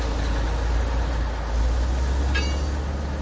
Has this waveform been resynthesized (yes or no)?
no